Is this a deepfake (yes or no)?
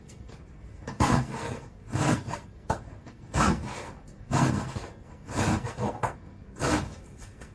yes